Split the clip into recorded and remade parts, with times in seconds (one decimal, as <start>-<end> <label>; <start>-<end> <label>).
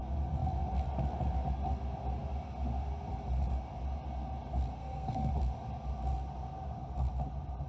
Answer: 0.0-4.8 recorded; 4.8-5.3 remade; 5.3-7.7 recorded